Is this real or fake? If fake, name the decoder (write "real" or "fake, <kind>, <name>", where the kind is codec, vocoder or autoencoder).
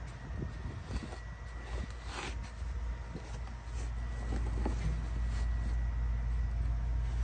real